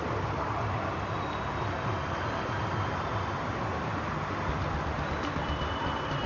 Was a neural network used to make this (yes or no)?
no